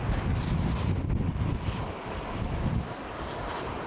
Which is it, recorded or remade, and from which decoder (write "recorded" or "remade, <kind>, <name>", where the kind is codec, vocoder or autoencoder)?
recorded